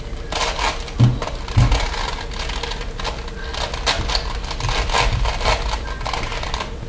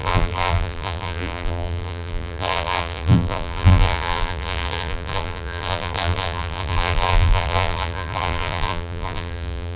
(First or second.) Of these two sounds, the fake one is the second